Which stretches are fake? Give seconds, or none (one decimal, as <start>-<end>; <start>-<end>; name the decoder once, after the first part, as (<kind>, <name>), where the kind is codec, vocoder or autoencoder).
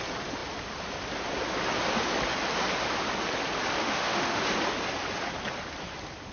3.8-4.4 (autoencoder, DAC-VAE)